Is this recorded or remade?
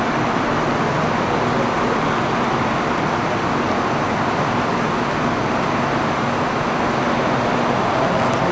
recorded